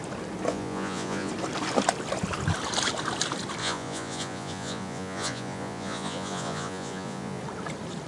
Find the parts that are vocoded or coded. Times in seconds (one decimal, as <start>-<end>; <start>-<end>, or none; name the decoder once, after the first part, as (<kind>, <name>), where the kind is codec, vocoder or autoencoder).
0.5-1.3 (vocoder, Vocos); 3.6-7.4

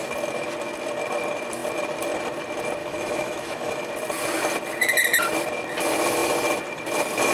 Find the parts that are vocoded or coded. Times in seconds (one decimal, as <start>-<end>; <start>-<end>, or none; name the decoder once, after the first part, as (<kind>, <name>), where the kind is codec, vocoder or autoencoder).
2.8-3.9 (autoencoder, DAC-VAE)

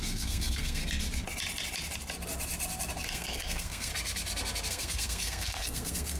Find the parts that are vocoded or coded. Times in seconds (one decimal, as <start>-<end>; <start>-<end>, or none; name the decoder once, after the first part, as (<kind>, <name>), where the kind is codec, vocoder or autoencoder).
0.0-0.8 (codec, SNAC); 3.1-3.9; 4.7-6.2